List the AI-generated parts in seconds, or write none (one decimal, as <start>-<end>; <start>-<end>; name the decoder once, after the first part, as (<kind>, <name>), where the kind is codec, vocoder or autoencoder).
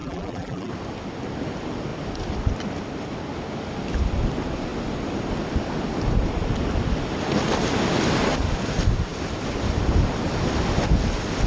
0.0-0.7 (vocoder, BigVGAN v2)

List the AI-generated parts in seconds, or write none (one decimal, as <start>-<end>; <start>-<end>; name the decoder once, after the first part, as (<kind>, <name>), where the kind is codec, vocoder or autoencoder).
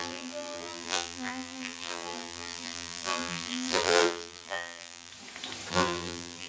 0.0-5.1 (vocoder, BigVGAN v2); 5.7-6.5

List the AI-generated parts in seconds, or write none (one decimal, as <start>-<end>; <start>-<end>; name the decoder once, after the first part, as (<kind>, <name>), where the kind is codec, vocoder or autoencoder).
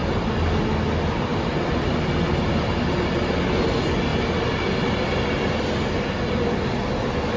0.0-0.6 (vocoder, BigVGAN v2); 1.3-1.9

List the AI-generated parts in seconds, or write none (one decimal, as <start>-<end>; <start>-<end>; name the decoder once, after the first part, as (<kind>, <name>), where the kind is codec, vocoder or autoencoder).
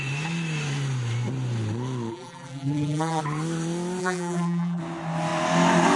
2.1-3.2 (vocoder, BigVGAN v2); 4.0-4.8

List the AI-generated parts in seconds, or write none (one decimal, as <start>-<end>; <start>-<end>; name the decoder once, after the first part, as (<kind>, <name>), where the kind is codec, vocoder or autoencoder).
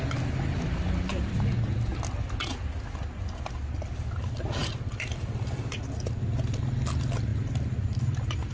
4.6-5.8 (vocoder, BigVGAN v2); 7.3-8.5